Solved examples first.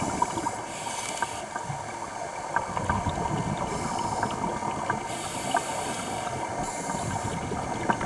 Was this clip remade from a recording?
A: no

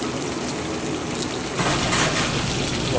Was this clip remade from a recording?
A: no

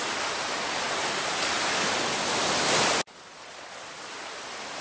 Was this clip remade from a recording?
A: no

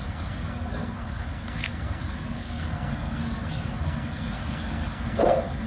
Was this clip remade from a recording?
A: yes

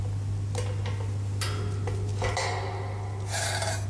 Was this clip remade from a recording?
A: no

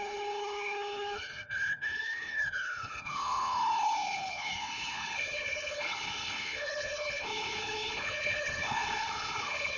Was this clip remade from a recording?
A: yes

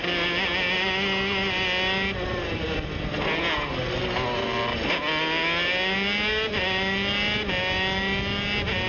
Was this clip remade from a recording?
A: no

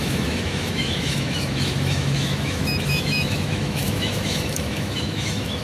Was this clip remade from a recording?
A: yes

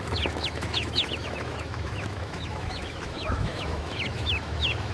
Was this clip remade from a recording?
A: yes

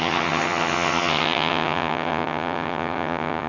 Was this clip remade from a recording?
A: yes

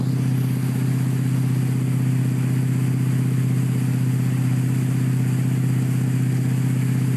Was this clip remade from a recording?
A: no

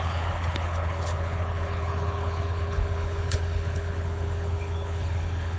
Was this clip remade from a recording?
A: yes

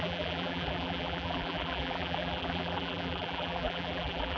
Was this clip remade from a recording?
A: yes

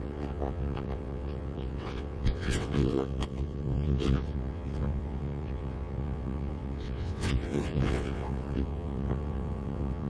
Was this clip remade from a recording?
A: yes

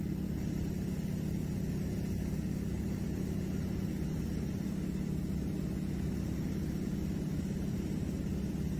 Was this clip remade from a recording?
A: no